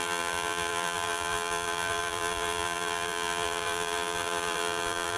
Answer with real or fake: fake